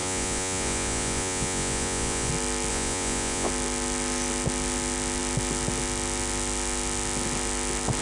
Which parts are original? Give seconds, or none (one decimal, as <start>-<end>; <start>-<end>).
2.3-2.7; 3.5-8.0